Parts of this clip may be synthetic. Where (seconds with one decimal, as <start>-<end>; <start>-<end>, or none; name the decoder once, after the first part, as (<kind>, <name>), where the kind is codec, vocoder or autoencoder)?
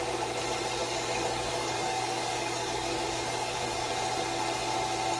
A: 0.8-3.9 (codec, DAC)